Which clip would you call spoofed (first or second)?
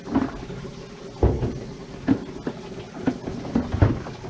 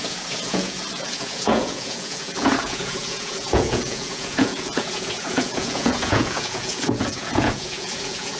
second